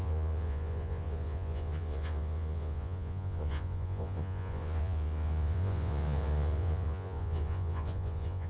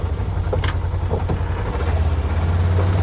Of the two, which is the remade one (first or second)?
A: first